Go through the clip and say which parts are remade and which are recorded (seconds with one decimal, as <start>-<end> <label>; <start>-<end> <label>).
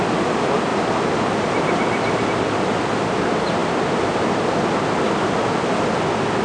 0.0-6.4 recorded